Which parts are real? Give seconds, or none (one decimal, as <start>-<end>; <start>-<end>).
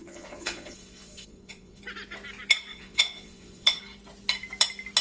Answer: 1.8-2.7; 3.8-5.0